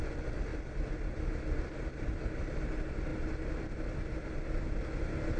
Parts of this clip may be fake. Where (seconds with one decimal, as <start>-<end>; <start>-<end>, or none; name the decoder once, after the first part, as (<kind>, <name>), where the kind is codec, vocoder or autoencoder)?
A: none